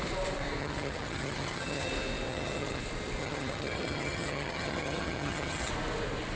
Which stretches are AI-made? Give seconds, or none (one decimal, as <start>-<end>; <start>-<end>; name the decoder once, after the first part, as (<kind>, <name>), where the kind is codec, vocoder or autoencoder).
0.6-1.9 (vocoder, HiFi-GAN); 2.3-2.8; 3.2-5.7